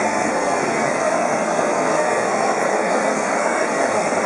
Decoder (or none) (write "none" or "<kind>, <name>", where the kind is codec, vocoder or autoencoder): codec, SNAC